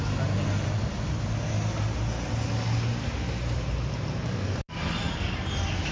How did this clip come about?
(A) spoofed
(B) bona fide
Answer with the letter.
B